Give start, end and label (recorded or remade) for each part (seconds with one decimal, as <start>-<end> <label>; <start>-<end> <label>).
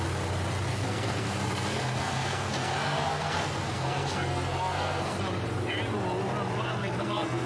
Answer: 0.0-0.7 recorded; 0.7-5.2 remade; 5.2-6.8 recorded; 6.8-7.5 remade